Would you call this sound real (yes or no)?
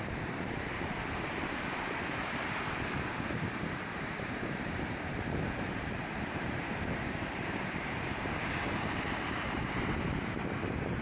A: no